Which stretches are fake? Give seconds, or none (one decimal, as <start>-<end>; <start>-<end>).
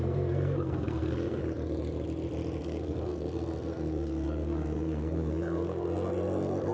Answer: 0.0-1.4; 2.6-6.7